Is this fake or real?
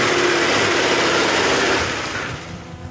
real